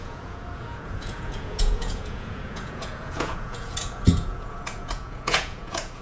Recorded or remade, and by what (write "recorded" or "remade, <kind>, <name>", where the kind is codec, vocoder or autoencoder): remade, vocoder, Vocos